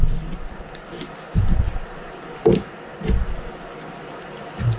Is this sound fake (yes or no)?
no